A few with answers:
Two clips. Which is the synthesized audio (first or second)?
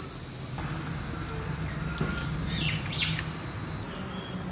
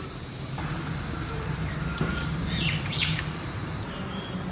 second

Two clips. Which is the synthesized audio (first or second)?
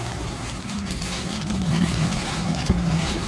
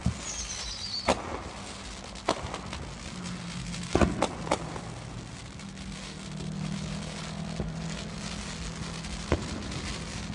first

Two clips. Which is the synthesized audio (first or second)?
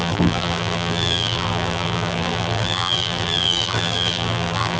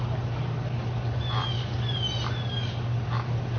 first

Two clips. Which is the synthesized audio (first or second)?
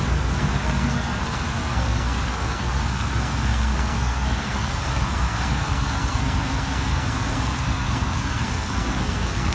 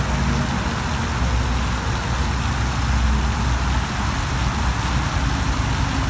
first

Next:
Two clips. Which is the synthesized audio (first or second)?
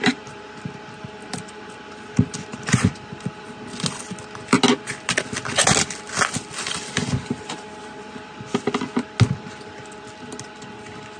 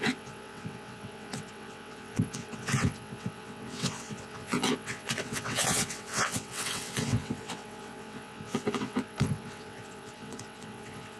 second